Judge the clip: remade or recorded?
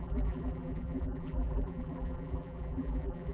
remade